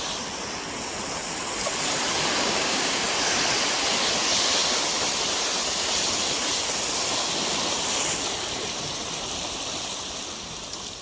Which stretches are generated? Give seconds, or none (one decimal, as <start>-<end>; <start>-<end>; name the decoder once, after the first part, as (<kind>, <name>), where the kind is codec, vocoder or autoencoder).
2.4-3.0 (codec, DAC)

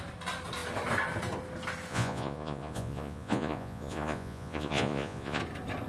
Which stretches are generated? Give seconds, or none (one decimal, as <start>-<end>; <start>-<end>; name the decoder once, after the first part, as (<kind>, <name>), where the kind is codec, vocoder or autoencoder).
1.9-5.4 (vocoder, Vocos)

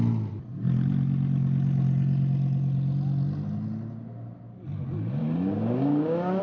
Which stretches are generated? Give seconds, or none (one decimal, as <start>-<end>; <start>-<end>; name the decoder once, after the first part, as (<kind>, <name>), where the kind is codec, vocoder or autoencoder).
5.2-6.4 (codec, DAC)

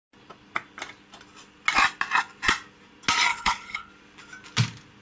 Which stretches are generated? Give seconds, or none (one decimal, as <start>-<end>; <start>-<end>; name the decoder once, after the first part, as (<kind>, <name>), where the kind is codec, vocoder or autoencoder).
3.3-3.9 (codec, HILCodec)